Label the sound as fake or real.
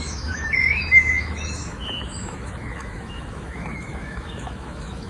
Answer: fake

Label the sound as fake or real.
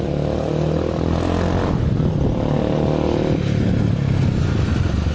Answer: real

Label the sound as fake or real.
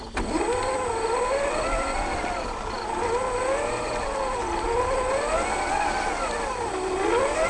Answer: real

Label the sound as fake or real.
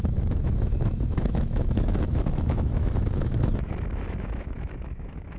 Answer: fake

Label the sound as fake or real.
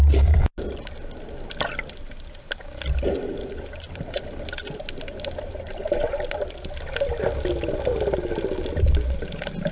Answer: real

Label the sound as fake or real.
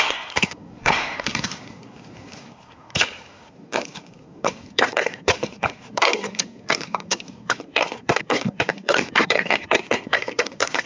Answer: fake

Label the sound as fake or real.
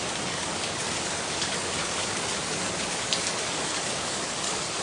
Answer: fake